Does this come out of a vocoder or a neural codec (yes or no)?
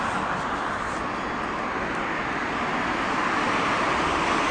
no